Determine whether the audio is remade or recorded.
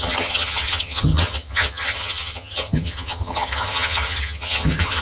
remade